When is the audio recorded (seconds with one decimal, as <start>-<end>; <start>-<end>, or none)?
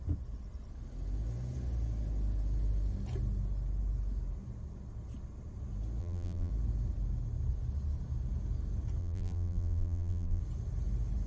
0.0-6.0; 6.5-9.0; 10.4-11.3